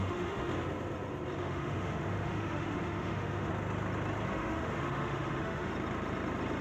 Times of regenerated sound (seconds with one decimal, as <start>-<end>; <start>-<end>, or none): 0.0-0.5; 1.4-3.5; 4.3-5.7